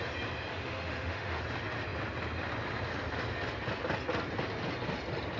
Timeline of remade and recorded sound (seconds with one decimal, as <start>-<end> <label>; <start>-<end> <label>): 0.0-0.5 recorded; 0.5-1.4 remade; 1.4-5.4 recorded